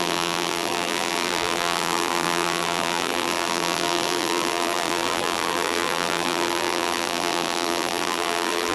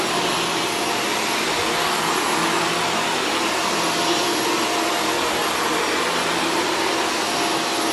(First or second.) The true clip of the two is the second